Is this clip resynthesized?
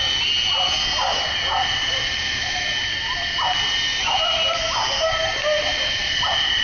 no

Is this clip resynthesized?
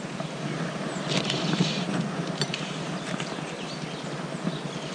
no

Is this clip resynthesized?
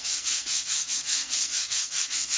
yes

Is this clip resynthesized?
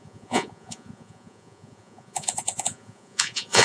yes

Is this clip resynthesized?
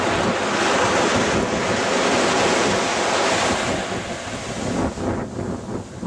no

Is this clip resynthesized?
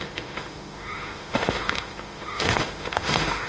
yes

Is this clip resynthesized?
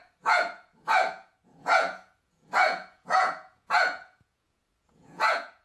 yes